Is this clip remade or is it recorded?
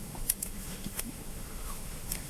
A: remade